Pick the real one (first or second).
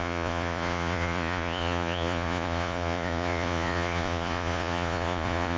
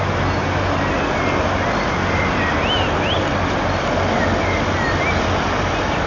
second